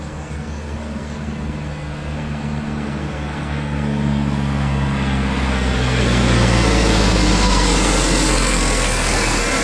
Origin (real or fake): fake